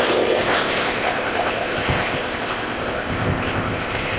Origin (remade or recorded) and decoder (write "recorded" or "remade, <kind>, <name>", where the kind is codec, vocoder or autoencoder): remade, codec, ZipCodec